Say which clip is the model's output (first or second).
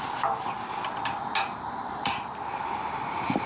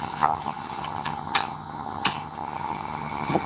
second